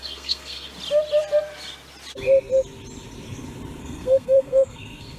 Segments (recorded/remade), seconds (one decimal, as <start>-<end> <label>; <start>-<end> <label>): 0.0-0.7 remade; 0.7-3.8 recorded; 3.8-5.2 remade